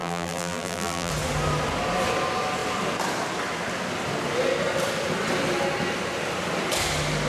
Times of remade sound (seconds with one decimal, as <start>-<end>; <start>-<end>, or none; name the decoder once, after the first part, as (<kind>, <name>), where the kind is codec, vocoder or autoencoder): 0.0-1.1 (vocoder, BigVGAN v2)